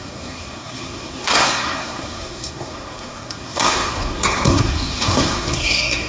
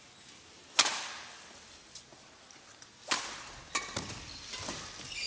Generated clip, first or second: first